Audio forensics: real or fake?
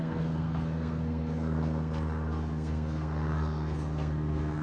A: fake